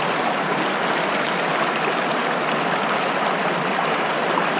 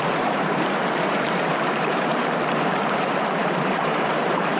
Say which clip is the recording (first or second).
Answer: first